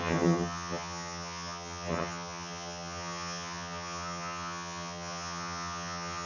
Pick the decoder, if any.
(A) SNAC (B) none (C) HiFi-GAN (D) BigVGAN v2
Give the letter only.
C